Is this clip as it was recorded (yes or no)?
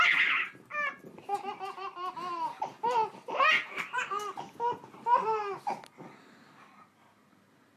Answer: yes